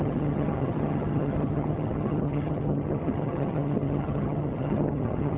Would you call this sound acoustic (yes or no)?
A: no